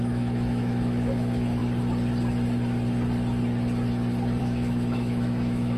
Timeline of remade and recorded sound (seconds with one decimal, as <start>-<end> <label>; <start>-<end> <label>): 0.0-1.6 remade; 1.6-4.4 recorded; 4.4-5.8 remade